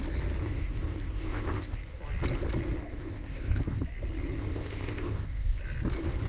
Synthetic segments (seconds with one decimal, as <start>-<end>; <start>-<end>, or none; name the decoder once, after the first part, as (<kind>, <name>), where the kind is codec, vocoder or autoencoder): 0.4-2.0 (codec, ZipCodec); 2.8-3.6; 4.4-5.6